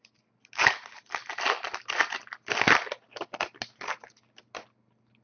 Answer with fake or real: real